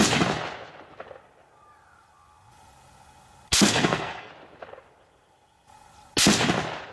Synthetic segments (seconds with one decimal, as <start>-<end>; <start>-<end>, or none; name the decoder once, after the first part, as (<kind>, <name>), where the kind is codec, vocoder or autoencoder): 3.5-4.3 (codec, SNAC)